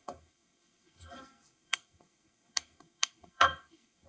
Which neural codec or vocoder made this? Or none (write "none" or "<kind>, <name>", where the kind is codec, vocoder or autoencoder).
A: codec, SNAC